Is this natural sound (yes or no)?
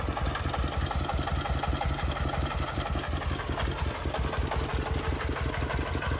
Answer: yes